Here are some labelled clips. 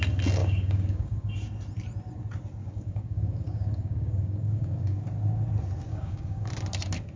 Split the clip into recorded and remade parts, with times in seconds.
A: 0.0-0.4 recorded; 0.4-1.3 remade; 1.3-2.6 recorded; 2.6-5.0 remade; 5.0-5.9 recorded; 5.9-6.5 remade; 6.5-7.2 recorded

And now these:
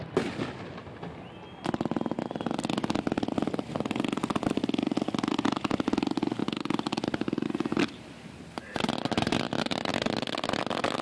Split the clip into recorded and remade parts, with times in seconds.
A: 0.0-11.0 recorded

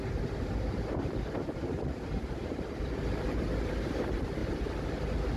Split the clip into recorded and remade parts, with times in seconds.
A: 0.0-4.4 remade; 4.4-5.4 recorded

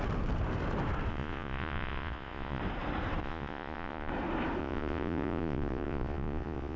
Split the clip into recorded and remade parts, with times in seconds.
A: 0.0-1.1 recorded; 1.1-2.6 remade; 2.6-3.2 recorded; 3.2-4.1 remade; 4.1-4.6 recorded; 4.6-6.8 remade

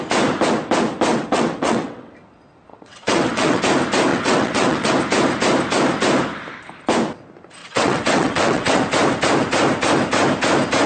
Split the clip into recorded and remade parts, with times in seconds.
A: 0.0-1.1 recorded; 1.1-2.1 remade; 2.1-2.7 recorded; 2.7-3.6 remade; 3.6-4.1 recorded; 4.1-4.9 remade; 4.9-7.6 recorded; 7.6-8.8 remade; 8.8-10.9 recorded

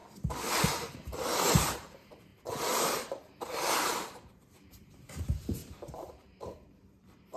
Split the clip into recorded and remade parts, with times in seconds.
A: 0.0-0.7 recorded; 0.7-7.4 remade

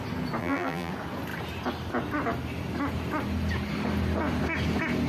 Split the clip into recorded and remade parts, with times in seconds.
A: 0.0-0.4 recorded; 0.4-0.9 remade; 0.9-5.1 recorded

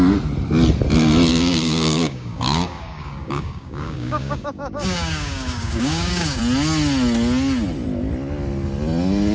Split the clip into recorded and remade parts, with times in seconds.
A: 0.0-1.3 recorded; 1.3-6.4 remade; 6.4-9.3 recorded